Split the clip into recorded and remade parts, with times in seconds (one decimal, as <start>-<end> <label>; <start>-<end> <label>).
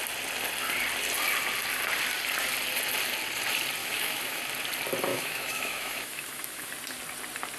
0.0-3.8 recorded; 3.8-4.4 remade; 4.4-5.1 recorded; 5.1-6.7 remade; 6.7-7.6 recorded